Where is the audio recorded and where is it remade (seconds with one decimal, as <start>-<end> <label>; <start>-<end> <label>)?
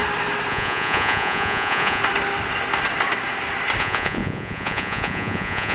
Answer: 0.0-0.5 recorded; 0.5-2.0 remade; 2.0-3.8 recorded; 3.8-5.7 remade